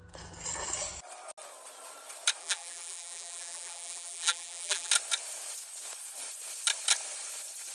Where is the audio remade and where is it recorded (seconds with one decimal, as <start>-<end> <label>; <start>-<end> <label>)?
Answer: 0.0-2.4 recorded; 2.4-4.9 remade; 4.9-7.7 recorded